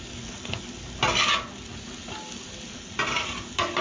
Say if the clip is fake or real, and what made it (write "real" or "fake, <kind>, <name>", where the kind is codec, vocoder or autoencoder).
real